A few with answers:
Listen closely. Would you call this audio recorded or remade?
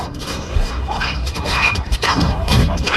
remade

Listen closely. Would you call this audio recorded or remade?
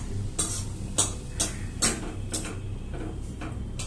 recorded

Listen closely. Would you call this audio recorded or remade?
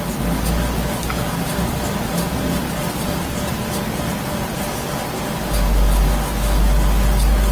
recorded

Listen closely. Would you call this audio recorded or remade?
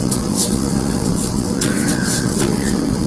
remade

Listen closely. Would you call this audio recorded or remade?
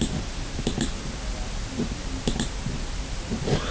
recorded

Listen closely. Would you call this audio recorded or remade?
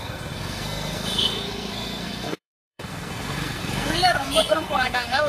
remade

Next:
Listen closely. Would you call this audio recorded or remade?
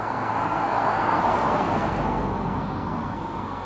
remade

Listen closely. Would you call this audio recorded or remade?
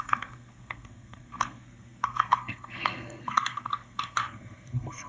remade